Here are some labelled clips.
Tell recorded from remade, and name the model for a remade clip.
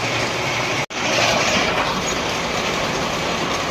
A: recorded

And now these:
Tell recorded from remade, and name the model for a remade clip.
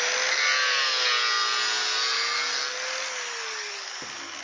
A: recorded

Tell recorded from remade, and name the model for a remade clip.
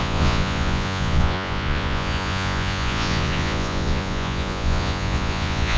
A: remade, vocoder, Vocos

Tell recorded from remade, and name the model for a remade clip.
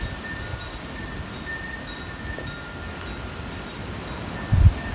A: recorded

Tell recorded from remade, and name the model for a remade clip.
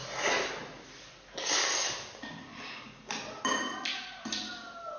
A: recorded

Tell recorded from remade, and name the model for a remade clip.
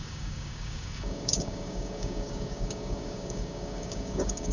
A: remade, codec, DAC